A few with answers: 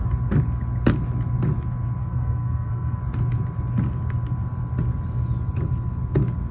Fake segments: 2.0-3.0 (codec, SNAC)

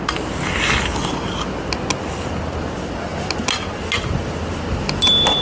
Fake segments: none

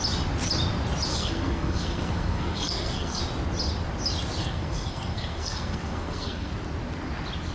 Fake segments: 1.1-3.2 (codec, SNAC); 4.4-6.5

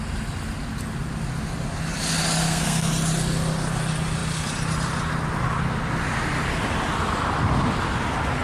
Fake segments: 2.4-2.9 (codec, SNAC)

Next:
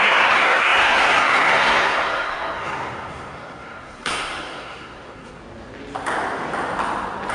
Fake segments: 0.0-5.4 (codec, SNAC)